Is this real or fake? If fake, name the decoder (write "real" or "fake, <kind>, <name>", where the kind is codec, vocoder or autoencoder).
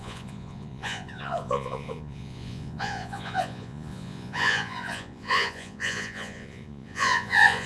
fake, vocoder, Vocos